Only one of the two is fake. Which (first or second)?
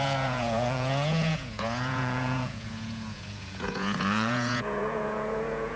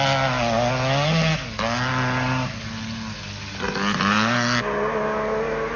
first